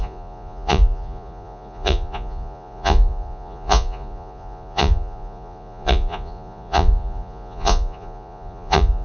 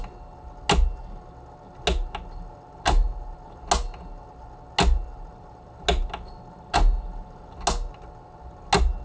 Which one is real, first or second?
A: second